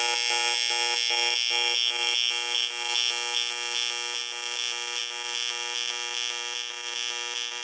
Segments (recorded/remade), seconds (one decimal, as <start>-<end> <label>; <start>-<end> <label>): 0.0-7.6 recorded